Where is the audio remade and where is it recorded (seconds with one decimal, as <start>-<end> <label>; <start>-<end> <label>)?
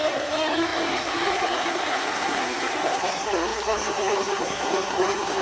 0.0-5.4 remade